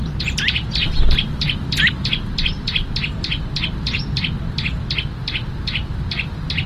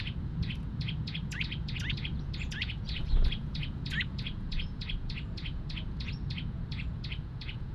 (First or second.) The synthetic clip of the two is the second